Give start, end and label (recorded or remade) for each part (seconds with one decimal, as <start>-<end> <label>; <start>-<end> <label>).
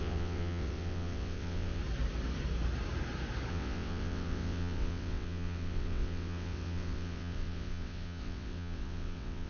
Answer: 0.0-1.8 remade; 1.8-3.5 recorded; 3.5-9.5 remade